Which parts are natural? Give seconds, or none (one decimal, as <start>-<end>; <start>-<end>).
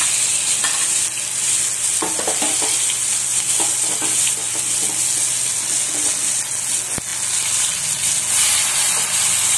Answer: 0.0-9.6